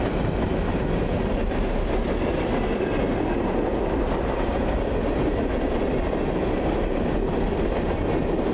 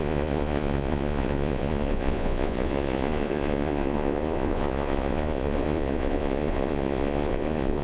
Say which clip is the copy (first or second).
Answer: second